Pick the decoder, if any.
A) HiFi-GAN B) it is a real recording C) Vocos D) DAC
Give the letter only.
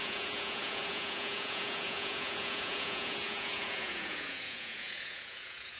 C